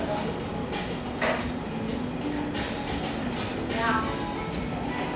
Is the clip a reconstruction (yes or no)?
no